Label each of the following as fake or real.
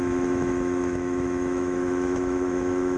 fake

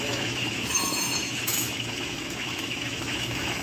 fake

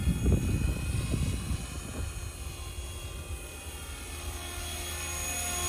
real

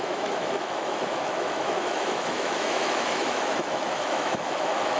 fake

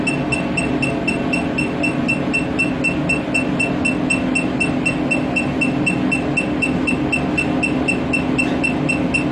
real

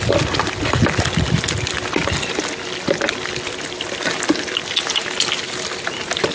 real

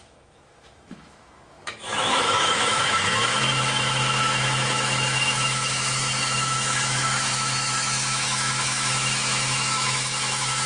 fake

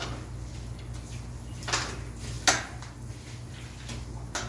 real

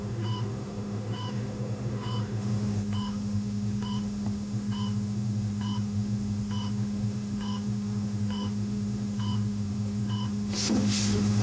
fake